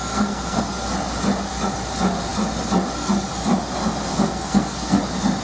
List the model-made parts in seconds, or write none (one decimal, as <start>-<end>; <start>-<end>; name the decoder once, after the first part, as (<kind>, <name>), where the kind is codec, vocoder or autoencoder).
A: 0.0-0.6 (codec, SNAC); 4.1-5.0